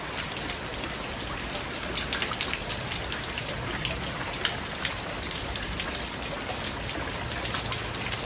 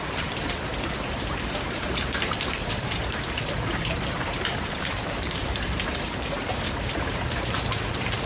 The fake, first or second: second